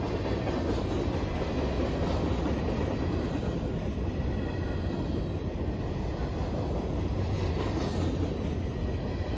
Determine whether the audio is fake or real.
real